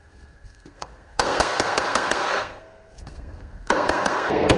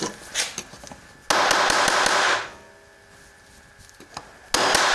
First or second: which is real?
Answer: second